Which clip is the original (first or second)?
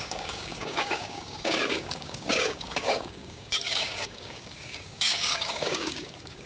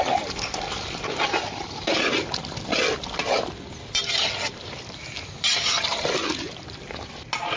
second